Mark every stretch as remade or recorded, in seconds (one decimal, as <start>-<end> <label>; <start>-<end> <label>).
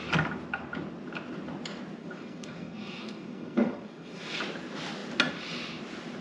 0.0-2.0 recorded; 2.0-4.4 remade; 4.4-6.2 recorded